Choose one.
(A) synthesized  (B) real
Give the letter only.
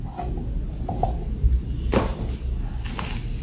B